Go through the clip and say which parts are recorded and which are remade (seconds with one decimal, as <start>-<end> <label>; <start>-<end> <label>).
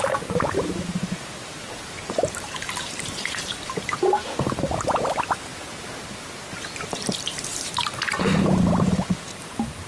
0.0-5.5 remade; 5.5-6.8 recorded; 6.8-9.9 remade